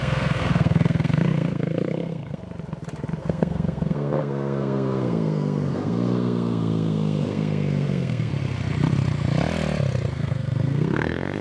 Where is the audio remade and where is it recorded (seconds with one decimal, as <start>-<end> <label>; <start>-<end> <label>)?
0.0-2.4 remade; 2.4-3.2 recorded; 3.2-8.3 remade; 8.3-10.1 recorded; 10.1-11.4 remade